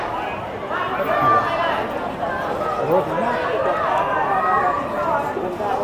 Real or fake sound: real